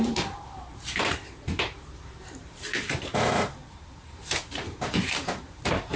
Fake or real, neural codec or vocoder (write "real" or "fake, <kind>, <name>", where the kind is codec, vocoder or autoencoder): fake, vocoder, BigVGAN v2